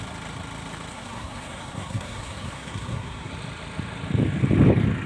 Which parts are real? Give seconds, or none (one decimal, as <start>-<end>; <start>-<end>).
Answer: 0.0-0.9; 3.3-5.1